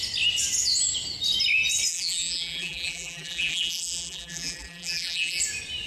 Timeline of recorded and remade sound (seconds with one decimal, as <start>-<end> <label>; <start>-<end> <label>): 0.0-1.9 recorded; 1.9-5.4 remade; 5.4-5.9 recorded